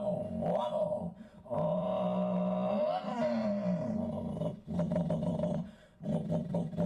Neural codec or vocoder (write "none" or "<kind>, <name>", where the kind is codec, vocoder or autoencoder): vocoder, BigVGAN v2